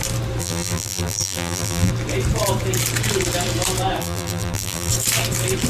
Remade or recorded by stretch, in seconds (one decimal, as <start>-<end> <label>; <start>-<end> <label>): 0.0-0.4 recorded; 0.4-1.9 remade; 1.9-4.0 recorded; 4.0-4.9 remade; 4.9-5.7 recorded